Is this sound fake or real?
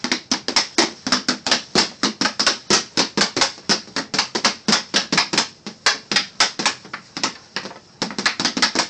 real